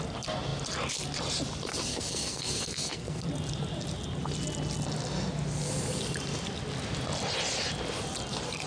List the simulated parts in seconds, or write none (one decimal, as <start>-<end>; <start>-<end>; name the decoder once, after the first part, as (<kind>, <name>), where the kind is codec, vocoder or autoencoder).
1.9-3.3 (codec, SNAC)